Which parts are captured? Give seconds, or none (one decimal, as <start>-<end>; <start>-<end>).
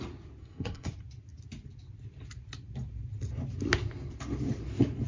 0.0-0.4; 0.9-5.1